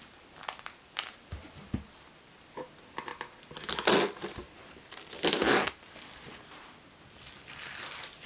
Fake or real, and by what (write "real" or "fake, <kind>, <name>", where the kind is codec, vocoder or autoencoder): real